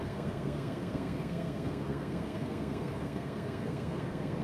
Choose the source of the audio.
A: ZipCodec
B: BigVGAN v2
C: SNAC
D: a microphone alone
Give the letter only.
C